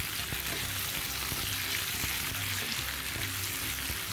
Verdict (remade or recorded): recorded